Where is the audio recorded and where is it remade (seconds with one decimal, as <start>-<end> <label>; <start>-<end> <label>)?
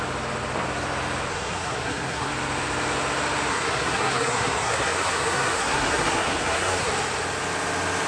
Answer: 0.0-1.3 recorded; 1.3-2.3 remade; 2.3-3.5 recorded; 3.5-6.9 remade; 6.9-8.1 recorded